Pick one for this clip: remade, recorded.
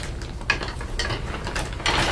recorded